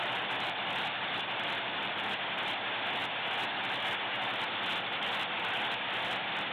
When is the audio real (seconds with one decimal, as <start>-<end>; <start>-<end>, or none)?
2.1-6.5